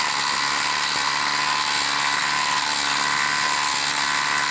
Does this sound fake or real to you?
real